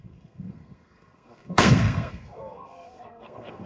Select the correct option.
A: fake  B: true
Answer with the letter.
A